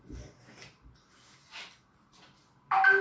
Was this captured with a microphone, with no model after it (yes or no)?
yes